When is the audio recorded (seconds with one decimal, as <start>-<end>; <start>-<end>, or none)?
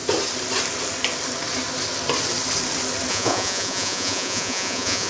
0.0-3.1